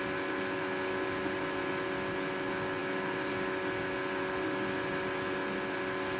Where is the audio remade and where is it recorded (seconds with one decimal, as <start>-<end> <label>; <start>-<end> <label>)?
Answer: 0.0-6.2 recorded